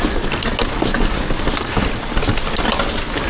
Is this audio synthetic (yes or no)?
no